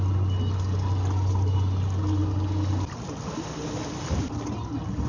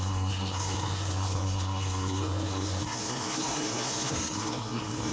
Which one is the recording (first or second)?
first